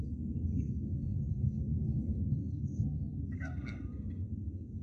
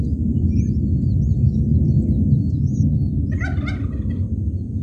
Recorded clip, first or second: second